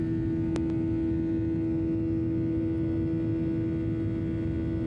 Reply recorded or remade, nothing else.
recorded